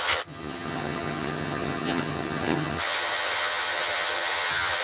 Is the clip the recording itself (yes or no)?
no